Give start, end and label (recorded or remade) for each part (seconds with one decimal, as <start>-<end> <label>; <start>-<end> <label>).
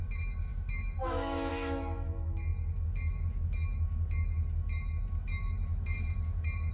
0.0-6.7 remade